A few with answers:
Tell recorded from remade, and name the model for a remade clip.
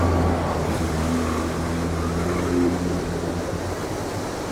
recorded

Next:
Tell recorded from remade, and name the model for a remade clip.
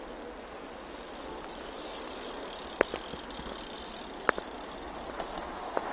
recorded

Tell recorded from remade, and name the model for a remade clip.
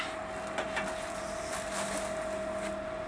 recorded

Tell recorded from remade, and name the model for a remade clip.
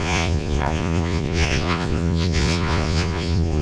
remade, vocoder, Vocos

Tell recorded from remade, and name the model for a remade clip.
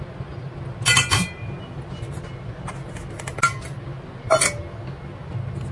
recorded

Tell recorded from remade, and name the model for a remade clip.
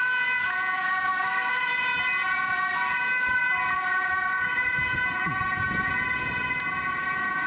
recorded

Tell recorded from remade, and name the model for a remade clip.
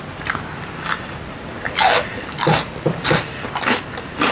recorded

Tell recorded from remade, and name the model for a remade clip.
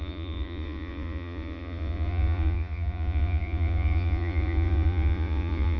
remade, vocoder, Vocos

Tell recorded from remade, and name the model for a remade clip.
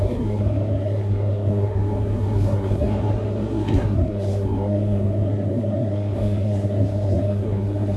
remade, codec, SNAC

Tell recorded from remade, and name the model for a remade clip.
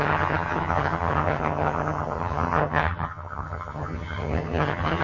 remade, vocoder, HiFi-GAN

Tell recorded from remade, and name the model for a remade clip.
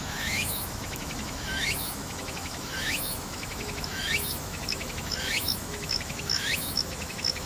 remade, autoencoder, DAC-VAE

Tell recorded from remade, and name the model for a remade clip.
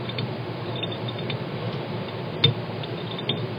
recorded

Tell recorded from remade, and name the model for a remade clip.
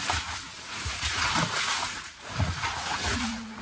remade, vocoder, Vocos